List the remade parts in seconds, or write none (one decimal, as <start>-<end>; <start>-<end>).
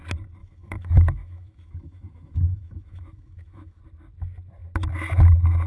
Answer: 0.4-3.8